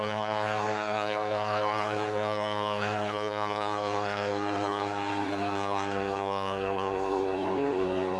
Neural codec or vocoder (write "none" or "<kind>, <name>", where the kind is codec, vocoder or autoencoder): codec, SNAC